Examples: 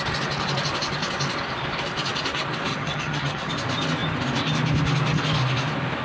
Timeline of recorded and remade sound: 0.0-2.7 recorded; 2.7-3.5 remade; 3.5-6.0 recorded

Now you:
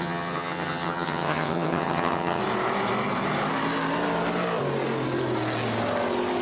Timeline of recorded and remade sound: 0.0-2.4 remade; 2.4-6.4 recorded